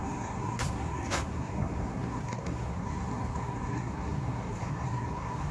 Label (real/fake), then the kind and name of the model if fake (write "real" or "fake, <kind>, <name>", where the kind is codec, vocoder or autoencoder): fake, codec, SNAC